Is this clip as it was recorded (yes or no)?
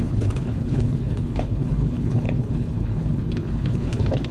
no